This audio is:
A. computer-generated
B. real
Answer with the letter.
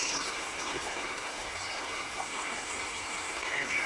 A